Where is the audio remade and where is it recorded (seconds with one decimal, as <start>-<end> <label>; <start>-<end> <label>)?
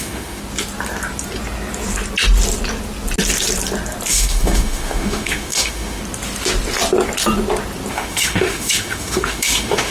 0.0-0.4 remade; 0.4-4.1 recorded; 4.1-6.0 remade; 6.0-7.9 recorded; 7.9-9.9 remade